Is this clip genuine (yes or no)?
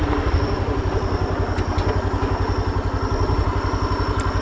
yes